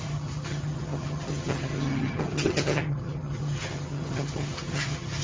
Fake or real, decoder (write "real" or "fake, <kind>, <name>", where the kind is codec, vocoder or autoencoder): fake, vocoder, HiFi-GAN